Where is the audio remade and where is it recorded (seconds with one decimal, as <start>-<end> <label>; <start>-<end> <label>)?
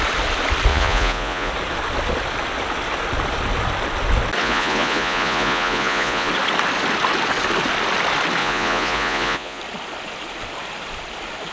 0.0-0.7 recorded; 0.7-1.5 remade; 1.5-4.4 recorded; 4.4-6.3 remade; 6.3-8.4 recorded; 8.4-9.6 remade; 9.6-11.5 recorded